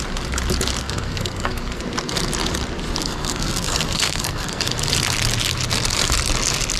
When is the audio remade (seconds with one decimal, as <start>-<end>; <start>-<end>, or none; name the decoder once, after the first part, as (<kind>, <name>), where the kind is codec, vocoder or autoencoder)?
0.8-1.8 (codec, SNAC); 3.0-4.6